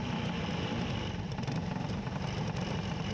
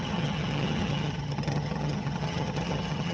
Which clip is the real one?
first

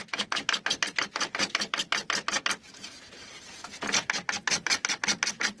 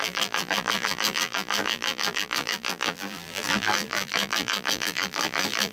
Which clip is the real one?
first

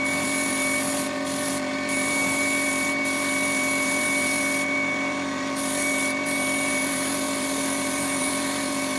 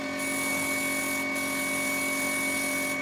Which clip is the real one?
second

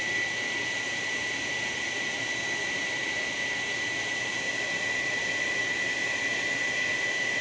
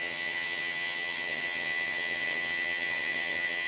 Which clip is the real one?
first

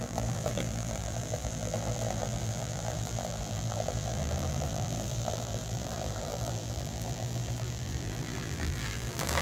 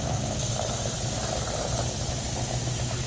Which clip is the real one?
second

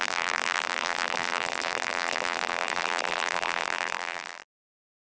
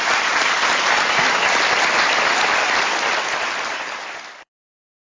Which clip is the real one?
second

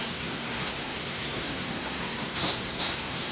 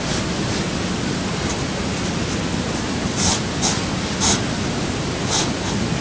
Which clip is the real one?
second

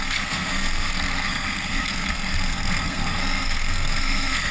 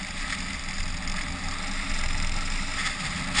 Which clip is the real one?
second